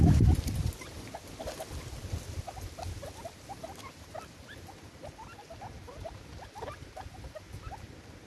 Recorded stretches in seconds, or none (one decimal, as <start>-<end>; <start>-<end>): 0.0-8.3